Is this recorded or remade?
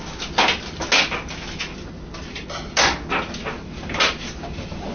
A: recorded